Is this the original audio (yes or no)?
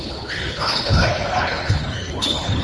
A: no